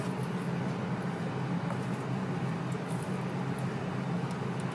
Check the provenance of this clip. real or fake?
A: real